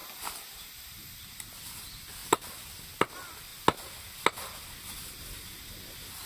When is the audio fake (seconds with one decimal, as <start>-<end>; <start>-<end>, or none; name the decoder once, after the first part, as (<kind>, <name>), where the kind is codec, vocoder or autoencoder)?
none